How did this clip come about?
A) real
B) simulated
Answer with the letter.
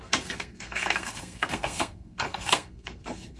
B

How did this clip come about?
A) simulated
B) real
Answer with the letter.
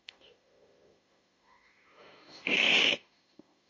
A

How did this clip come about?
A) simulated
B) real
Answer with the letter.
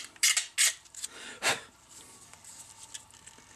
B